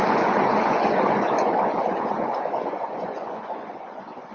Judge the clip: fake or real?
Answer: fake